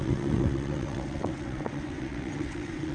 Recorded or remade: remade